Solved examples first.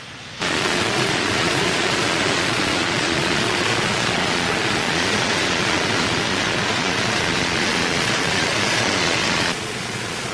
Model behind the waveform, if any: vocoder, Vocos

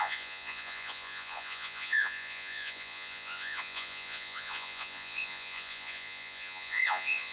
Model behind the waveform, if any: vocoder, Vocos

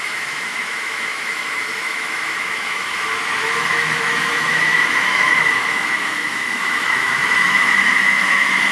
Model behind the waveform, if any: autoencoder, DAC-VAE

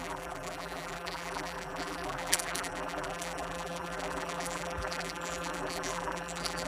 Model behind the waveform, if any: vocoder, BigVGAN v2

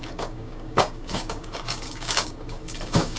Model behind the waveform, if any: codec, DAC